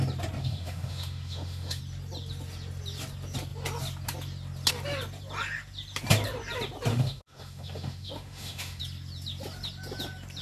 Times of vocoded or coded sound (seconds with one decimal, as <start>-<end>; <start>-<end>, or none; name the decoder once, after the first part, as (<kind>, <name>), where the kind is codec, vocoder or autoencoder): 0.4-1.8 (autoencoder, DAC-VAE); 6.9-8.8